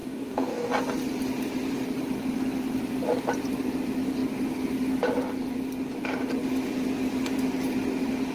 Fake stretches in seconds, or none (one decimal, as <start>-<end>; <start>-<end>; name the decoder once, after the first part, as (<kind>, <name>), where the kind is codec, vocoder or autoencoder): 0.0-0.7 (codec, DAC)